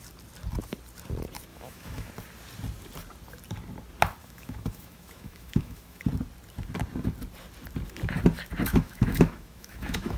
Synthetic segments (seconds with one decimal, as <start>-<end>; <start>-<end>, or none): 1.5-2.1; 4.2-6.0; 8.7-10.2